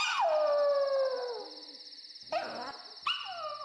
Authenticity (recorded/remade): recorded